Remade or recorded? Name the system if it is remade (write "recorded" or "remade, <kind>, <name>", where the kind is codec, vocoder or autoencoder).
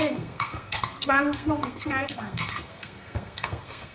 remade, codec, SNAC